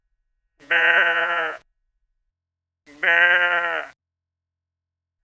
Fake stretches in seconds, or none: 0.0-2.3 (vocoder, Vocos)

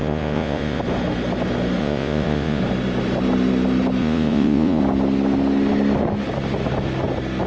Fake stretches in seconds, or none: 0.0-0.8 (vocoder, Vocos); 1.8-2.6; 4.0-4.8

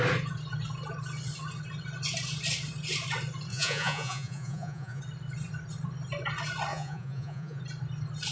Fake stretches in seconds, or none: 3.5-5.0 (vocoder, Vocos); 6.7-7.6

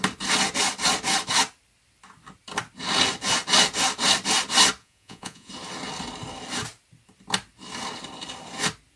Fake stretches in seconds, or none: 4.8-5.5 (vocoder, Vocos)

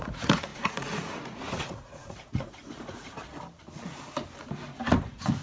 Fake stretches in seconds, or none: 0.0-3.2 (vocoder, Vocos); 5.0-5.4

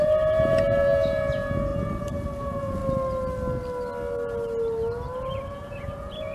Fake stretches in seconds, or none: 0.0-1.7 (vocoder, Vocos); 2.4-2.8; 5.5-6.3

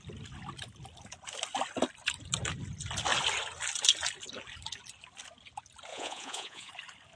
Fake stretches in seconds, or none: 5.9-6.7 (vocoder, Vocos)